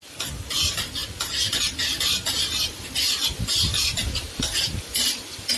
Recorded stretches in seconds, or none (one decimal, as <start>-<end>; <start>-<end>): 0.0-5.6

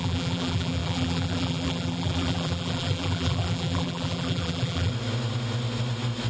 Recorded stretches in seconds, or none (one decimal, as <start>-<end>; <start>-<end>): 4.9-6.3

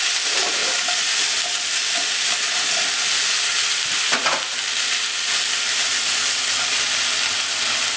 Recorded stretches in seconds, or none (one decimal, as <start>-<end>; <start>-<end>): 0.0-8.0

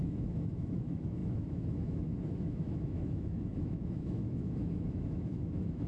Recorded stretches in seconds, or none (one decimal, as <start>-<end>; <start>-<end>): none

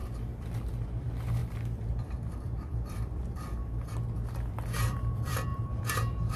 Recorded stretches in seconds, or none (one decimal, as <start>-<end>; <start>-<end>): 0.0-0.6; 3.6-4.5

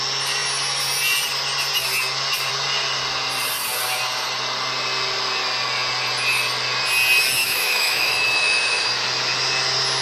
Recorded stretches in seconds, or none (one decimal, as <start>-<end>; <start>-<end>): 0.0-7.4; 8.9-10.0